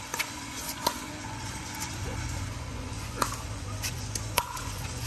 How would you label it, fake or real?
fake